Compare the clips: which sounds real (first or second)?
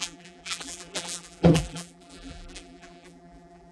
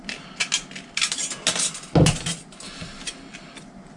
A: second